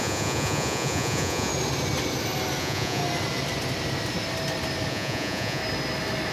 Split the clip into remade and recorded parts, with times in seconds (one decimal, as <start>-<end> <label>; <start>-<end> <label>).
0.0-1.5 remade; 1.5-2.6 recorded; 2.6-3.0 remade; 3.0-4.9 recorded; 4.9-5.6 remade; 5.6-6.3 recorded